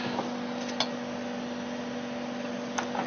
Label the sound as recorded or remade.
recorded